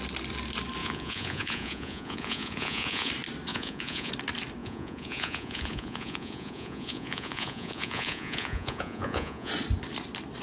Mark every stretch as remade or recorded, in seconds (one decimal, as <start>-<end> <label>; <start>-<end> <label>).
0.0-0.8 recorded; 0.8-3.1 remade; 3.1-3.5 recorded; 3.5-4.1 remade; 4.1-4.6 recorded; 4.6-9.5 remade; 9.5-10.4 recorded

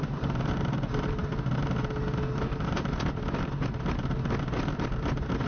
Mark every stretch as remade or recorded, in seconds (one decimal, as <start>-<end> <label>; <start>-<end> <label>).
0.0-5.5 recorded